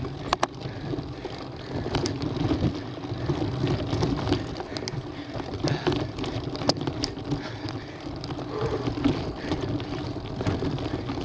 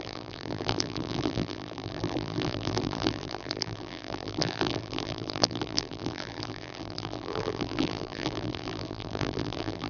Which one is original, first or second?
first